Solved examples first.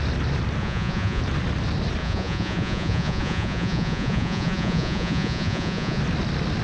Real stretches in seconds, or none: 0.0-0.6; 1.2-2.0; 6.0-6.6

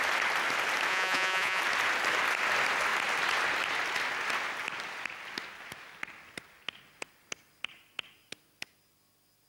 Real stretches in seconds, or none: 0.0-0.9; 1.6-9.5

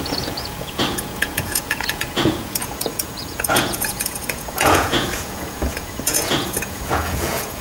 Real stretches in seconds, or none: none

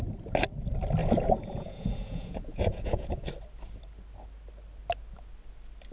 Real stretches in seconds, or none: 0.0-1.0; 3.3-5.9

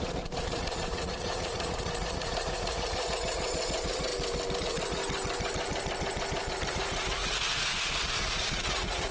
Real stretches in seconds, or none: 4.1-4.6; 5.0-6.7

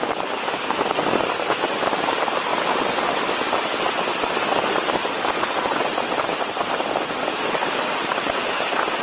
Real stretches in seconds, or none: 0.0-9.0